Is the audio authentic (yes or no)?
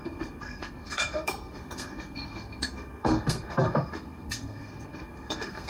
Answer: no